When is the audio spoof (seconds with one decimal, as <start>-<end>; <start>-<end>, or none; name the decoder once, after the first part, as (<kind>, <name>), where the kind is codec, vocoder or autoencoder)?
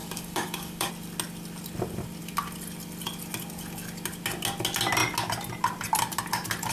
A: 0.0-0.9 (codec, DAC)